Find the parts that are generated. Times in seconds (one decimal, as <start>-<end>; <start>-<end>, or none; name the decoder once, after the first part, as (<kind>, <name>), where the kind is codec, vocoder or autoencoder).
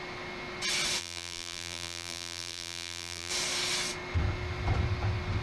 1.0-3.3 (vocoder, BigVGAN v2)